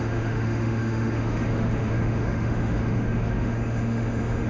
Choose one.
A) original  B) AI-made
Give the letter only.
B